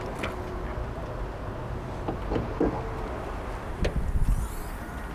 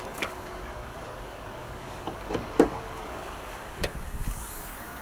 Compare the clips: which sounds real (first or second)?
first